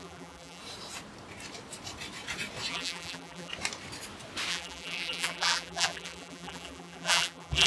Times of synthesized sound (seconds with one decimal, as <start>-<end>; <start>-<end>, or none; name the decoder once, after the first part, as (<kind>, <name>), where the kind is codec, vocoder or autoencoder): 0.0-0.6 (vocoder, BigVGAN v2); 2.7-3.5; 4.5-7.7